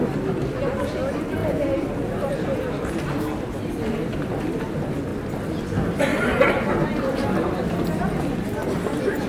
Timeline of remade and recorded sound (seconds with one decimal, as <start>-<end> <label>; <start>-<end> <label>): 0.0-1.4 recorded; 1.4-2.3 remade; 2.3-6.1 recorded; 6.1-7.7 remade; 7.7-9.3 recorded